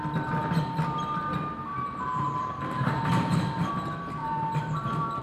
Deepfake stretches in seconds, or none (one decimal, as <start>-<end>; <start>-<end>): 1.7-3.7; 4.2-5.2